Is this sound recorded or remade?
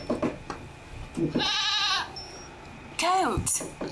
recorded